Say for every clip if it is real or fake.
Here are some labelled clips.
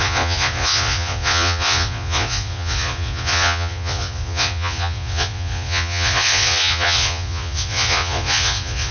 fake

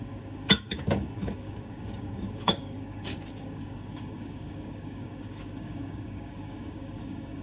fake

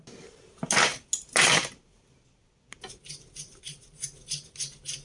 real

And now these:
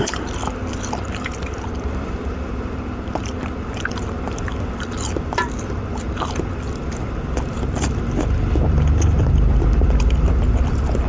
fake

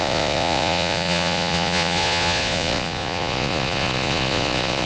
fake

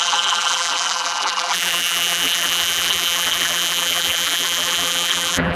fake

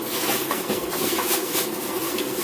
fake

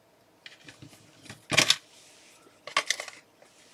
real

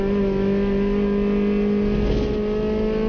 real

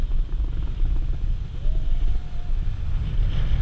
real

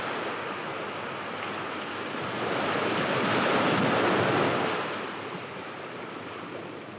real